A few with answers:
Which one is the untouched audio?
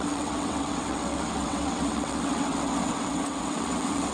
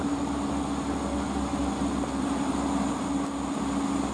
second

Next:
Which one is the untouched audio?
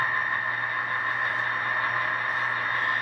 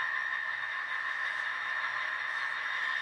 first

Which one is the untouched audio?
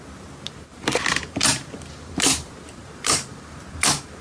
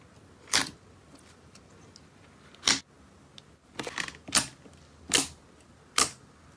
second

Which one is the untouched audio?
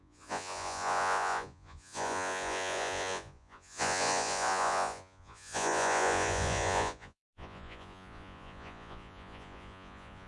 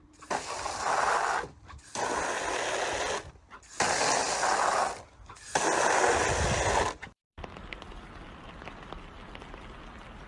second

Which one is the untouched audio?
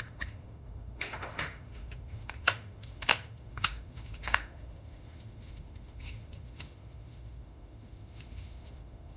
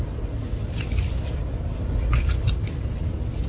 second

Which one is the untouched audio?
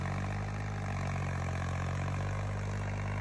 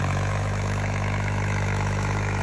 first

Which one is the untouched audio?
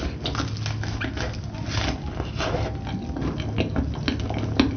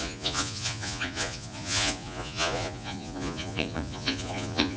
first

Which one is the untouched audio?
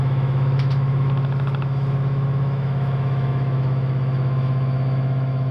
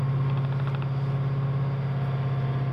second